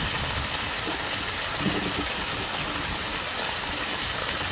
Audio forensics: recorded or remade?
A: recorded